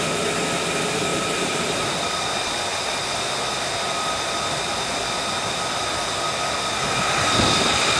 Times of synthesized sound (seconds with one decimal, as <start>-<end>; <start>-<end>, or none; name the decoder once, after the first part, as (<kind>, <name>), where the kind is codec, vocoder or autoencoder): 1.1-2.3 (vocoder, BigVGAN v2)

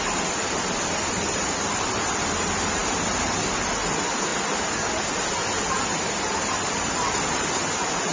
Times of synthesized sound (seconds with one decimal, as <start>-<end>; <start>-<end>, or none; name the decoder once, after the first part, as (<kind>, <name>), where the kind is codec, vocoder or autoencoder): 0.0-4.3 (vocoder, BigVGAN v2); 6.2-8.1

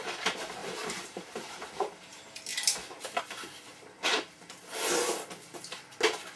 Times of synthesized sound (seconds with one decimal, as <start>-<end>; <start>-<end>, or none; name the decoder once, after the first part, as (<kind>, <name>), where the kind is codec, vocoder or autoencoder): 0.6-2.1 (vocoder, BigVGAN v2); 3.7-4.6

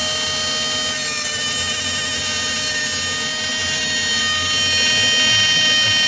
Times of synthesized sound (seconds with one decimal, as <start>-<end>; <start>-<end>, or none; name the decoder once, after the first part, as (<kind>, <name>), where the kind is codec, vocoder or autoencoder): 3.6-4.2 (vocoder, BigVGAN v2)

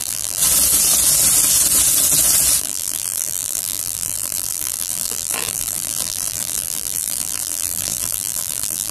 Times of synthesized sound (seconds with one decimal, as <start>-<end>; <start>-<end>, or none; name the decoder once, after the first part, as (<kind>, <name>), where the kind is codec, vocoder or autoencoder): 0.0-0.4 (vocoder, BigVGAN v2); 2.6-8.9

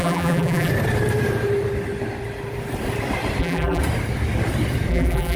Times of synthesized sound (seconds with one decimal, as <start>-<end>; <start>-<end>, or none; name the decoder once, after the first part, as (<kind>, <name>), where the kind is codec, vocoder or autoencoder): 0.0-0.7 (vocoder, BigVGAN v2); 3.4-3.8; 4.9-5.4

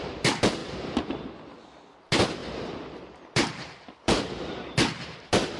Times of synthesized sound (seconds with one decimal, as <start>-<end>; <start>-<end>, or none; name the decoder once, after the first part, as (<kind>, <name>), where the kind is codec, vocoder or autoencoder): none